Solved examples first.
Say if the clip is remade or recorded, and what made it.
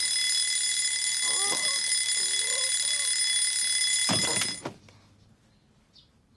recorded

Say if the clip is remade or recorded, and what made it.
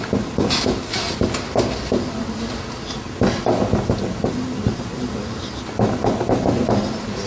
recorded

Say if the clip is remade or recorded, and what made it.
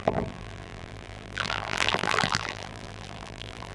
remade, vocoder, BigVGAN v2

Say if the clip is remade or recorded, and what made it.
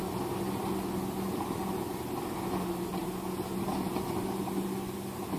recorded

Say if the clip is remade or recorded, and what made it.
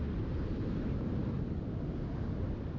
recorded